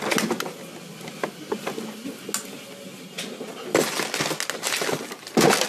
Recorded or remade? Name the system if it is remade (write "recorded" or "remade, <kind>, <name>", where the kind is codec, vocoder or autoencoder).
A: recorded